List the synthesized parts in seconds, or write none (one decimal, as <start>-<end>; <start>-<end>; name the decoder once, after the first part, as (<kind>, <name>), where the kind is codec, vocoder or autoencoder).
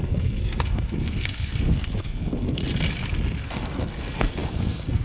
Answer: 0.0-2.6 (codec, SNAC); 3.4-5.0